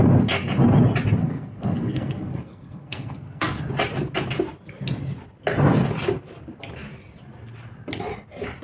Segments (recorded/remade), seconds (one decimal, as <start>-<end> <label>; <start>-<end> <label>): 0.0-1.2 recorded; 1.2-3.6 remade; 3.6-8.6 recorded